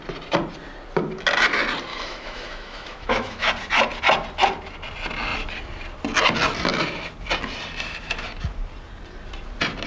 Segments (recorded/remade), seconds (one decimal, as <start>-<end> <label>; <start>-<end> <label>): 0.0-1.9 recorded; 1.9-3.5 remade; 3.5-9.9 recorded